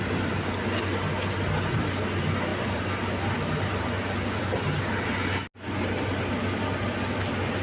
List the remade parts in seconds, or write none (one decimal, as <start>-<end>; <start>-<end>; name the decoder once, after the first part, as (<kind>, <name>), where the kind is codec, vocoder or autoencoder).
none